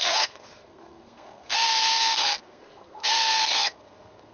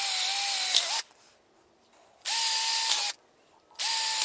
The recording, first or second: second